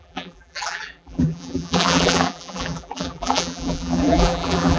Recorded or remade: remade